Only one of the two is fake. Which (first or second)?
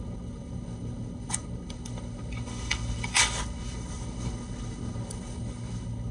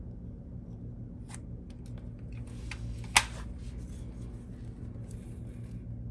first